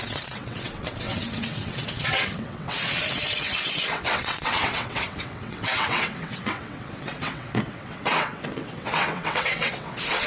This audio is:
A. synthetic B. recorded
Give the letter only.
A